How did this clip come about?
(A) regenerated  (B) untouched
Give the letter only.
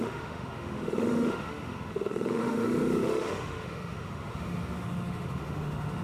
A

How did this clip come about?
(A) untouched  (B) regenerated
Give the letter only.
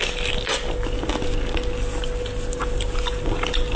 A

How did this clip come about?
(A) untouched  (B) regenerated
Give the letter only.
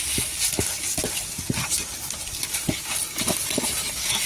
A